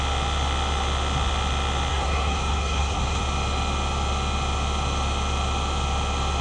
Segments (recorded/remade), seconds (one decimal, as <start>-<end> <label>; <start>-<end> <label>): 0.0-1.9 recorded; 1.9-3.2 remade; 3.2-6.4 recorded

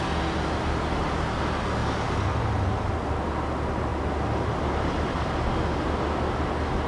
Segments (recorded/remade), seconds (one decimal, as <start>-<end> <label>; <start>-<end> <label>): 0.0-6.9 recorded